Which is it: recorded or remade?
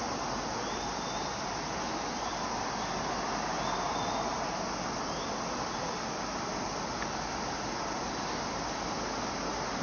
recorded